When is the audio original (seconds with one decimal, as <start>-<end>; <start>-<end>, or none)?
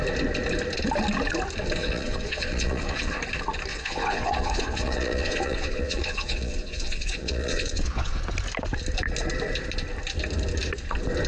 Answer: 0.0-1.8; 3.2-3.7; 8.2-11.3